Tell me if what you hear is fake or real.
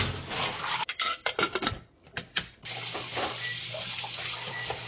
real